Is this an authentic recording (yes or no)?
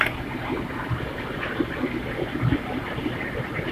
no